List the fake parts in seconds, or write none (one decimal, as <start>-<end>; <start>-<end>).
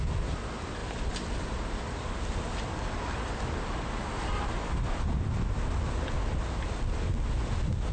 none